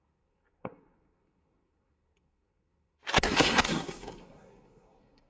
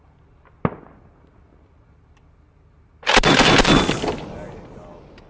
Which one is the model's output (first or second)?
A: first